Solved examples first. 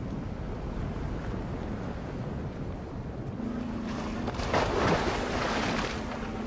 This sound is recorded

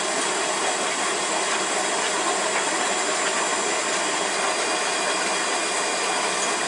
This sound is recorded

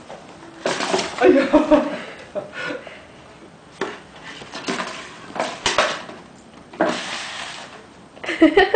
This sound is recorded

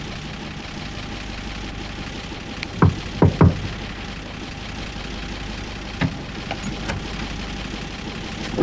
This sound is recorded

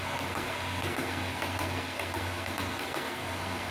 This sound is remade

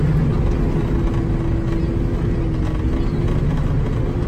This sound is recorded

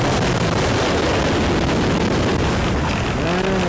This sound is recorded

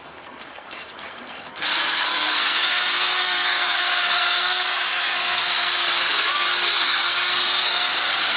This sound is remade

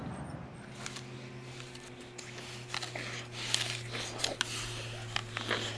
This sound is recorded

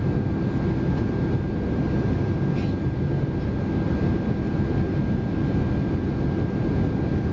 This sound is recorded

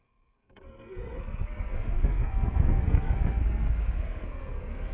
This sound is remade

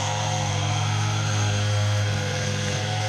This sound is remade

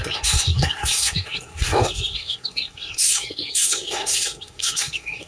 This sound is remade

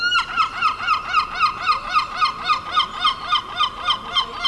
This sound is recorded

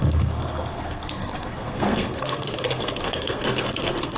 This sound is remade